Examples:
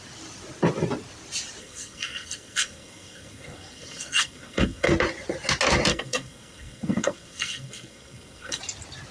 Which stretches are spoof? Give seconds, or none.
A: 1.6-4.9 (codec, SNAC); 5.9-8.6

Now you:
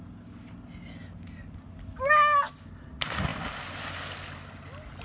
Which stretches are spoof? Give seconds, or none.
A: none

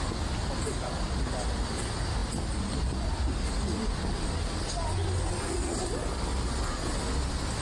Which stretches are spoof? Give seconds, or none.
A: none

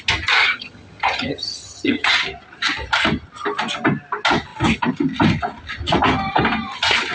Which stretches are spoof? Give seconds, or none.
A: 0.4-2.2 (vocoder, HiFi-GAN)

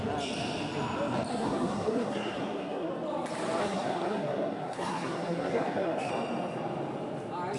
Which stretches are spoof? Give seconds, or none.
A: 1.3-2.9 (codec, SNAC); 3.6-6.1

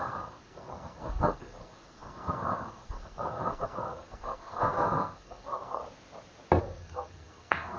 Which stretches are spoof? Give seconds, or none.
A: 0.0-5.8 (codec, SNAC); 6.6-7.8

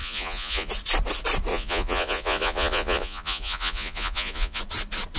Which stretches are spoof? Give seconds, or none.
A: 0.0-0.7 (vocoder, Vocos); 1.5-4.6